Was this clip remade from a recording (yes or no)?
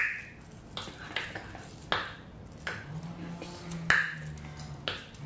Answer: no